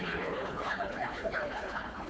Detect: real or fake fake